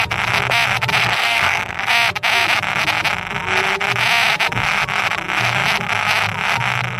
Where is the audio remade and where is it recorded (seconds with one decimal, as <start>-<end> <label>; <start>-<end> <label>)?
0.0-1.0 recorded; 1.0-1.9 remade; 1.9-7.0 recorded

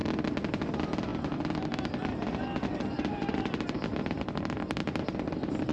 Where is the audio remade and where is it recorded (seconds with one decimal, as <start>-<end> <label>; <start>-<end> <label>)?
0.0-5.7 recorded

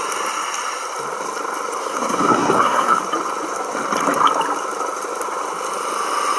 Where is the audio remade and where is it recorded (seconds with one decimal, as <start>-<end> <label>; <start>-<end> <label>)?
0.0-1.8 recorded; 1.8-3.0 remade; 3.0-6.4 recorded

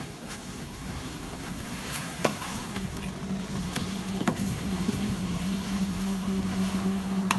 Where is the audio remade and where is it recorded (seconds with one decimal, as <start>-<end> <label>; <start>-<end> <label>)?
0.0-3.0 remade; 3.0-3.6 recorded; 3.6-7.4 remade